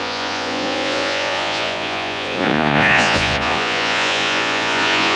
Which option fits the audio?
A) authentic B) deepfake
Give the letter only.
B